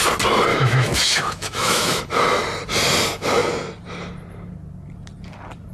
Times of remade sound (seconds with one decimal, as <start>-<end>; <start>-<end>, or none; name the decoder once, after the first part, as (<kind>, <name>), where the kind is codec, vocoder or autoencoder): 0.5-2.0 (autoencoder, DAC-VAE)